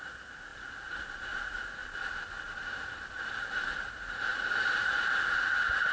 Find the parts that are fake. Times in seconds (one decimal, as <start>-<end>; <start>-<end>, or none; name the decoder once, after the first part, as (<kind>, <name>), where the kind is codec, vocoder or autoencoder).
0.0-1.8 (vocoder, Vocos); 3.3-5.9